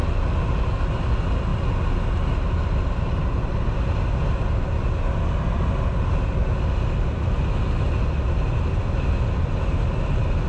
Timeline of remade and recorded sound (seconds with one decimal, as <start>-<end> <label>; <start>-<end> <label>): 0.0-10.5 recorded